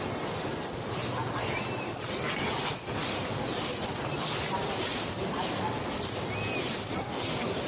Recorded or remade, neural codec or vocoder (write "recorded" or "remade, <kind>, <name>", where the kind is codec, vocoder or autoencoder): recorded